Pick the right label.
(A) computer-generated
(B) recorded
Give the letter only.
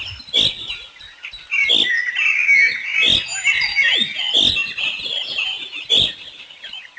B